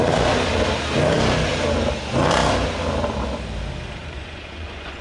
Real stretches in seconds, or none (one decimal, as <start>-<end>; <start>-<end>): 0.0-4.0